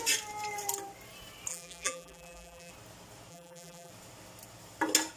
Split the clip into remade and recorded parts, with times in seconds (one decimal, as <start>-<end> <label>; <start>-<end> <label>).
0.0-1.5 recorded; 1.5-2.7 remade; 2.7-3.3 recorded; 3.3-3.9 remade; 3.9-5.2 recorded